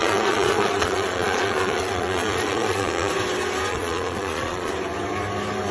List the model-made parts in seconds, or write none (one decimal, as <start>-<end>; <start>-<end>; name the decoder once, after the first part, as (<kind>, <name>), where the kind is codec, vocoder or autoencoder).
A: 0.0-3.1 (vocoder, Vocos); 3.7-4.7